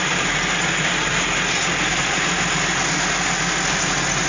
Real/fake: real